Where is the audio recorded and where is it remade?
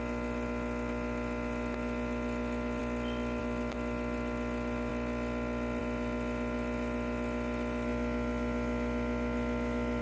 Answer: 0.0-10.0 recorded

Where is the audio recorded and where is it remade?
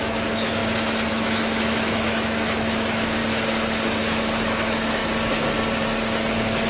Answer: 0.0-0.6 remade; 0.6-1.1 recorded; 1.1-3.2 remade; 3.2-4.0 recorded; 4.0-5.0 remade; 5.0-6.7 recorded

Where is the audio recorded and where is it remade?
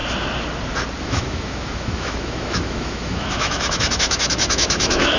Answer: 0.0-1.0 recorded; 1.0-5.2 remade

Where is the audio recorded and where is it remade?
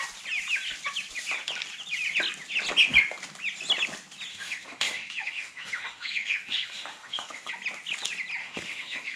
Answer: 0.0-4.3 recorded; 4.3-7.5 remade; 7.5-8.4 recorded; 8.4-9.2 remade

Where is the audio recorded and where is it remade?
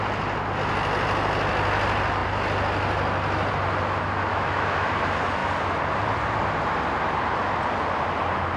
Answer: 0.0-4.3 recorded; 4.3-4.9 remade; 4.9-8.6 recorded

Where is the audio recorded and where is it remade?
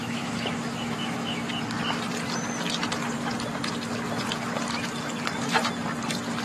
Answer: 0.0-1.5 remade; 1.5-6.4 recorded